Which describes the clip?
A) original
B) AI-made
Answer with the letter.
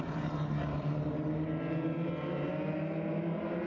A